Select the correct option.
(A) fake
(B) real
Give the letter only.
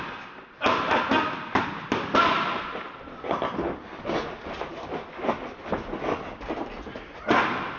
B